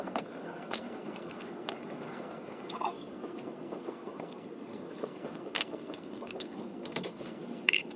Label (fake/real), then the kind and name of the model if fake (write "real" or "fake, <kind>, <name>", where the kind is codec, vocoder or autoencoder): fake, codec, SNAC